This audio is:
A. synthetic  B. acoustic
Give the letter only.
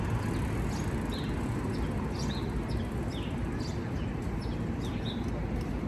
B